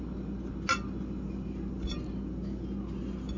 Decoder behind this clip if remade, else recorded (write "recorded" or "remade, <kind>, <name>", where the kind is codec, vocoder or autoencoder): recorded